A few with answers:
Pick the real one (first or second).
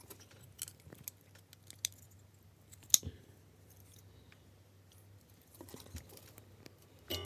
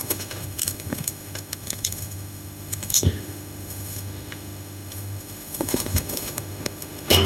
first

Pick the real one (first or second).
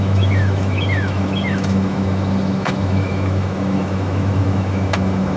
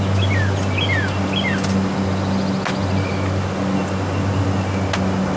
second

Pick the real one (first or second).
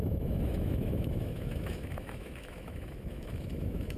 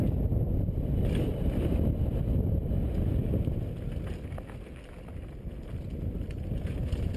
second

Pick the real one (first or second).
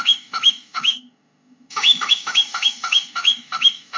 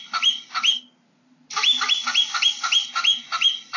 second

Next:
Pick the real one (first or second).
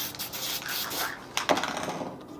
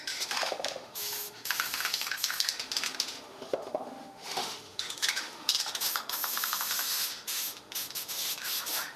first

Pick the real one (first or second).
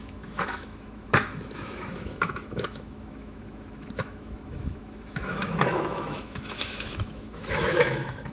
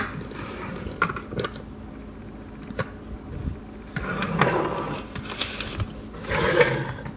second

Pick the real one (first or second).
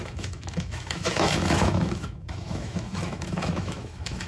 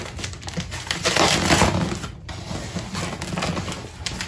second